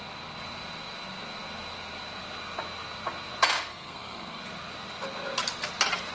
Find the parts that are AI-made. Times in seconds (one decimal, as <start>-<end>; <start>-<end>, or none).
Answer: 3.7-4.4